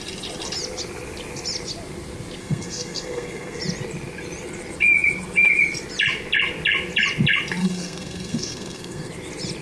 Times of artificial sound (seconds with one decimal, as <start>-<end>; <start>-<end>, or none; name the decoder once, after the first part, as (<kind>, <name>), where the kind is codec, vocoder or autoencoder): 2.4-3.6 (codec, SNAC); 7.6-9.1